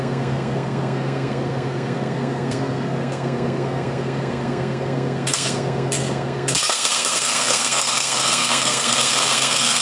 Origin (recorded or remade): remade